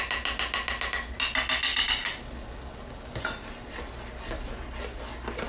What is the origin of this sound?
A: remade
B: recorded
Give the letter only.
B